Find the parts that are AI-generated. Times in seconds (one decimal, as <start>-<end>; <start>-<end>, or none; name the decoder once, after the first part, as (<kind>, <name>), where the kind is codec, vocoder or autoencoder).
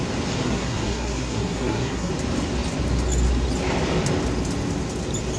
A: 0.4-2.1 (codec, SNAC)